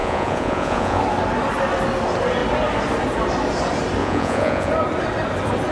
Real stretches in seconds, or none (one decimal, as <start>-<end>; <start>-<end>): 1.0-4.0; 4.7-5.7